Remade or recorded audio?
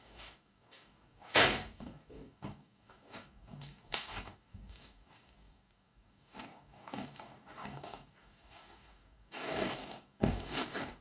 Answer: remade